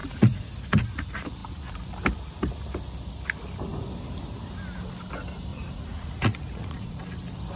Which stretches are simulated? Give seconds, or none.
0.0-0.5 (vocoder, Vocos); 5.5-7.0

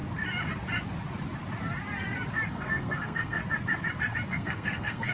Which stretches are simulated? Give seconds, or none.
2.5-3.4 (codec, SNAC); 4.3-5.1

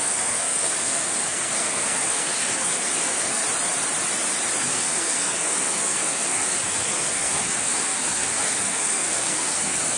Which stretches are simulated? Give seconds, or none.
0.0-3.4 (codec, SNAC); 4.6-10.0

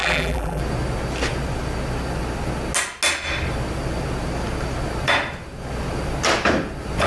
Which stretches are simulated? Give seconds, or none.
0.0-0.6 (vocoder, BigVGAN v2)

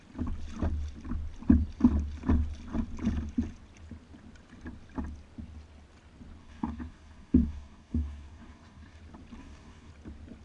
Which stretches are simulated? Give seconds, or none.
6.4-9.0 (codec, DAC); 9.4-9.9

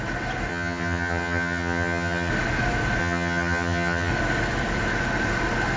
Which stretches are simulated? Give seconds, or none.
0.5-2.3 (vocoder, HiFi-GAN); 3.0-4.1

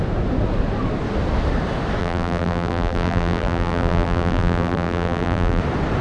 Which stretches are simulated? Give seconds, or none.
2.0-5.6 (vocoder, BigVGAN v2)